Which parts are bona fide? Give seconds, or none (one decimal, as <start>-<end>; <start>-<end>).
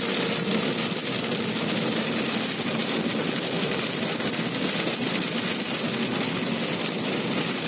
0.0-1.0; 4.3-7.7